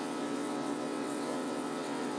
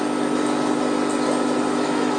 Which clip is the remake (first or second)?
first